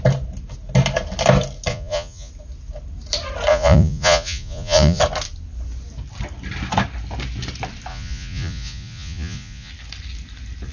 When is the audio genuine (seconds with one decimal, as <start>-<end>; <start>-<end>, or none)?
0.0-1.7; 2.3-3.5; 5.0-7.9; 9.7-10.7